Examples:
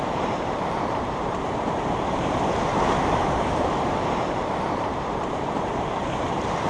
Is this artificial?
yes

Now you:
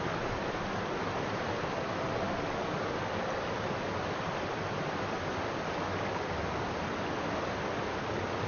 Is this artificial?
no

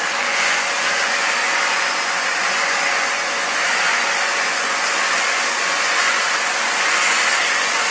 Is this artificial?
yes